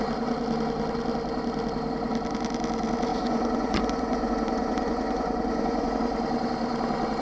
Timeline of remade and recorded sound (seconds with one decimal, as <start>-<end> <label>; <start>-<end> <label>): 0.0-3.1 recorded; 3.1-5.9 remade; 5.9-7.2 recorded

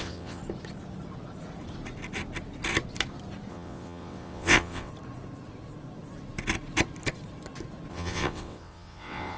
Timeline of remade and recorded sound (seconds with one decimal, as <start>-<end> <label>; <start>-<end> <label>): 0.0-0.4 remade; 0.4-3.5 recorded; 3.5-4.9 remade; 4.9-7.9 recorded; 7.9-9.4 remade

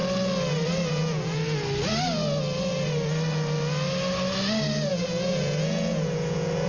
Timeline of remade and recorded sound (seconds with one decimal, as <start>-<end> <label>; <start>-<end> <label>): 0.0-0.9 recorded; 0.9-1.4 remade; 1.4-4.9 recorded; 4.9-6.7 remade

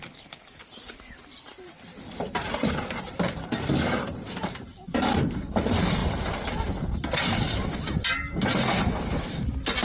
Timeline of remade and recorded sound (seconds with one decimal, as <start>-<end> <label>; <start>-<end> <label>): 0.0-1.9 recorded; 1.9-5.5 remade; 5.5-6.0 recorded; 6.0-7.0 remade; 7.0-9.8 recorded

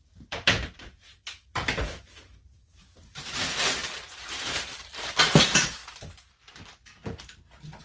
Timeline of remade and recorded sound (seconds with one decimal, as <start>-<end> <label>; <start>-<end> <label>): 0.0-5.8 remade; 5.8-7.8 recorded

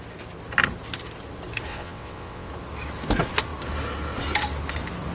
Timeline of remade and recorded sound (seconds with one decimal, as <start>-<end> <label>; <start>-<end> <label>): 0.0-1.7 recorded; 1.7-2.5 remade; 2.5-5.1 recorded